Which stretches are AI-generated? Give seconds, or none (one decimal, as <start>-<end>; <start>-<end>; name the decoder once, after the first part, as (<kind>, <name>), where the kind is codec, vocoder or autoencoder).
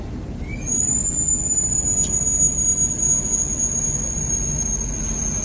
none